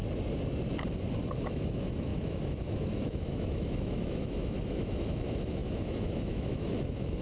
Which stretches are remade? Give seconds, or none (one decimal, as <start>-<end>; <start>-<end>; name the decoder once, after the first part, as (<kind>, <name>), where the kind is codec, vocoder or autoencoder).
1.5-7.2 (autoencoder, DAC-VAE)